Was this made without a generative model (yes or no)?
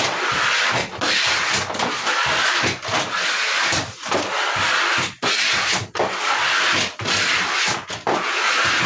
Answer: yes